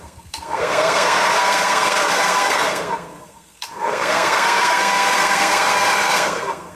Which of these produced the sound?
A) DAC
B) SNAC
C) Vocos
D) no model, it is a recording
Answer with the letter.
B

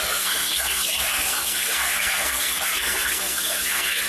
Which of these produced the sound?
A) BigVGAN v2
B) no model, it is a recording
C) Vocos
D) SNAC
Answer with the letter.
D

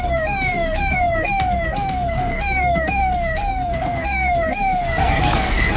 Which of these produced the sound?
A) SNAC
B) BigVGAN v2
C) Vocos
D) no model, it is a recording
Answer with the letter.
A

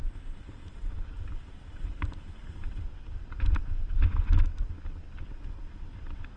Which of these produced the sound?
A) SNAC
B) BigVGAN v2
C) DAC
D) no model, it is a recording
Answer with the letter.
D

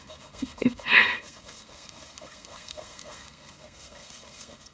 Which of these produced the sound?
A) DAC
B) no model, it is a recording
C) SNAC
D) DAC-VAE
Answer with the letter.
C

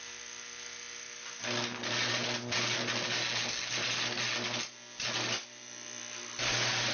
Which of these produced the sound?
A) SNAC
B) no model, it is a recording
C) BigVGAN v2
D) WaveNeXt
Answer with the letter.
B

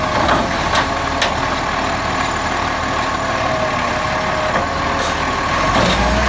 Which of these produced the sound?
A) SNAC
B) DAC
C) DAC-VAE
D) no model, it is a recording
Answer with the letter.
D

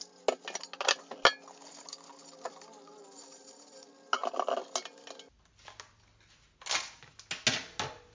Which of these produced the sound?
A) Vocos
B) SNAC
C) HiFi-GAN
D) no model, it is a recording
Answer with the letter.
D